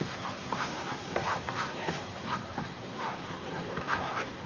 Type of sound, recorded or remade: remade